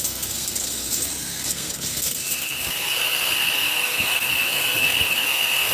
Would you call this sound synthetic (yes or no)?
yes